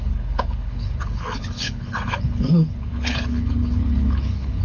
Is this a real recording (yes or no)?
no